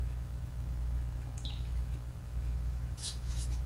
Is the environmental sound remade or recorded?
remade